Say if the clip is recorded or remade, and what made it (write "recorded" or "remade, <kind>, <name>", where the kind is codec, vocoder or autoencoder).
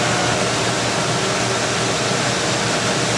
recorded